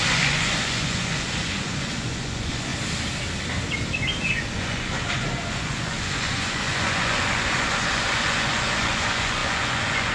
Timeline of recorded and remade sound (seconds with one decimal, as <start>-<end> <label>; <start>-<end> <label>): 0.0-2.7 remade; 2.7-4.3 recorded; 4.3-10.1 remade